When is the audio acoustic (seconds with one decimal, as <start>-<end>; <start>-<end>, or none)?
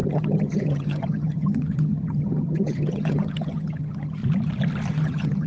4.2-4.9